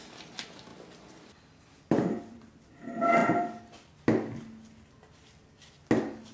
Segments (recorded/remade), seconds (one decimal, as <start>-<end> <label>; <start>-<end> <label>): 0.0-6.3 recorded